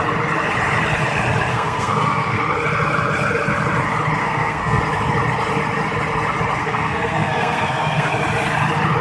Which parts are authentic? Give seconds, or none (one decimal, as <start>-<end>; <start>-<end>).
0.0-1.5; 2.4-4.2; 4.8-6.6; 8.1-9.0